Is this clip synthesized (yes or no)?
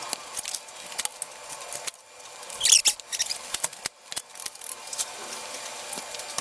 no